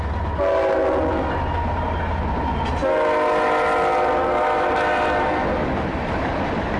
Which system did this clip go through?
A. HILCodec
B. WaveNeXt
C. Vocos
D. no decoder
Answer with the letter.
D